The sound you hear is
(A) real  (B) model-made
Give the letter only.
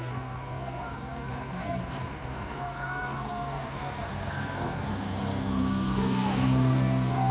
B